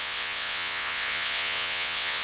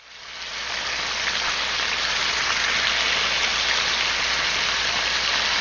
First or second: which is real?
second